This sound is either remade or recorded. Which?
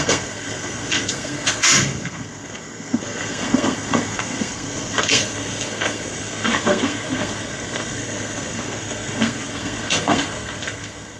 remade